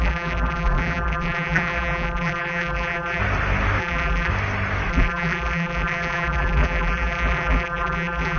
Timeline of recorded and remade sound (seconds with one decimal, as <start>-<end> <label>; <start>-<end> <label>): 0.0-3.2 remade; 3.2-3.8 recorded; 3.8-4.3 remade; 4.3-4.9 recorded; 4.9-8.4 remade